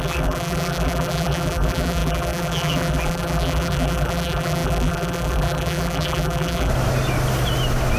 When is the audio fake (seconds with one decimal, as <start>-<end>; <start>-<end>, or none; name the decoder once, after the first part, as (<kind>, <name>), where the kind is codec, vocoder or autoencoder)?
0.0-6.7 (vocoder, BigVGAN v2)